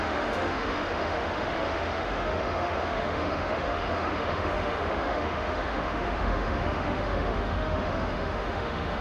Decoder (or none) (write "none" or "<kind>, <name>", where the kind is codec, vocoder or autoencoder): autoencoder, DAC-VAE